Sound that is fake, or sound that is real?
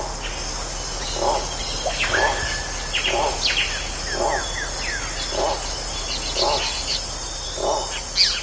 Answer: real